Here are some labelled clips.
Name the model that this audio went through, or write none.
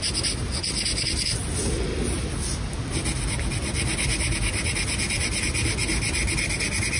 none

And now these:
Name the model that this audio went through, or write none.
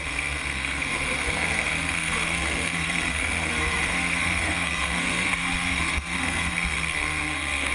codec, SNAC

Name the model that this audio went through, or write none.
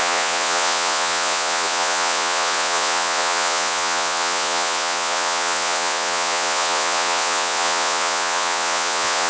vocoder, Vocos